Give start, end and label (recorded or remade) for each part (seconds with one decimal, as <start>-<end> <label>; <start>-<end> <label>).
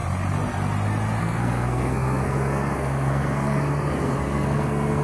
0.0-1.2 recorded; 1.2-5.0 remade